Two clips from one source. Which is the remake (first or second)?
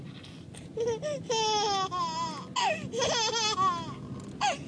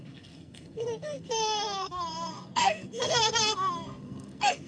second